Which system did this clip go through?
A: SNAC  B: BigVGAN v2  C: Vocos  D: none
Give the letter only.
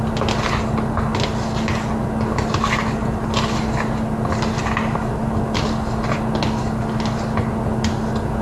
D